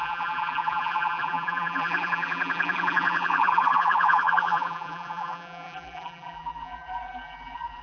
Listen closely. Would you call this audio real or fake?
fake